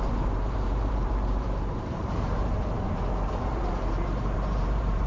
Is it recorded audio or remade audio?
remade